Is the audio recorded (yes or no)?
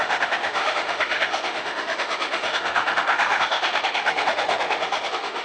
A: no